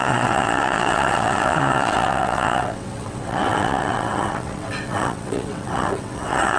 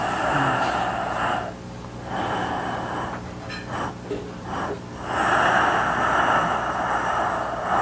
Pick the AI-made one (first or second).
first